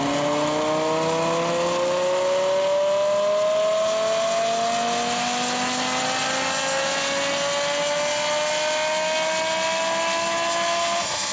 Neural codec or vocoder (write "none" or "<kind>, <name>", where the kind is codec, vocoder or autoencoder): none